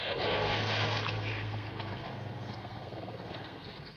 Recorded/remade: remade